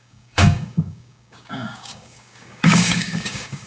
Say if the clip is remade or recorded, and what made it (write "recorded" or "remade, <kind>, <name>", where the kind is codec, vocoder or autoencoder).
remade, codec, DAC